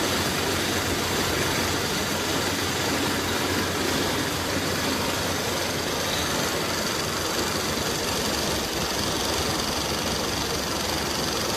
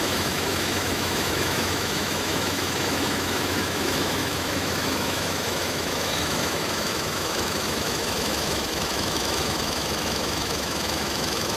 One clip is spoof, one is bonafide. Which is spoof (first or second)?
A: second